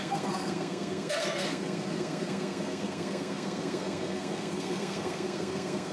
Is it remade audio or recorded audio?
remade